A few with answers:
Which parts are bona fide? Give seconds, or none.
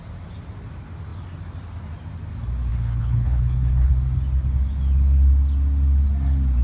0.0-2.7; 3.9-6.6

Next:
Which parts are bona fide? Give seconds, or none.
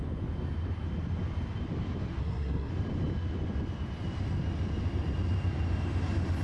0.0-2.2; 2.7-6.4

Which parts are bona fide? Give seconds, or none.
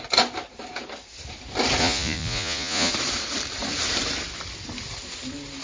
0.0-1.8; 2.9-5.6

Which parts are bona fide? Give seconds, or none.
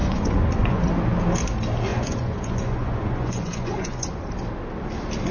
0.9-1.9; 4.2-5.3